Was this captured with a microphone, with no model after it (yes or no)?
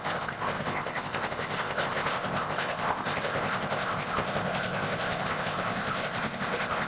no